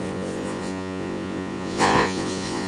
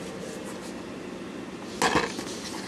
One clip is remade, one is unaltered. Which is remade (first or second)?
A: first